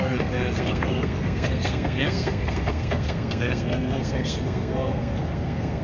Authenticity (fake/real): fake